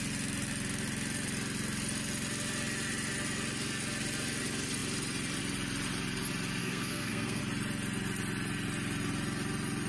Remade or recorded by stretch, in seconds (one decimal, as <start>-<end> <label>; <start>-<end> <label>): 0.0-6.6 recorded; 6.6-7.4 remade; 7.4-9.9 recorded